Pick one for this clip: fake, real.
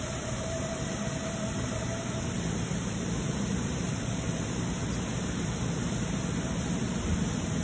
fake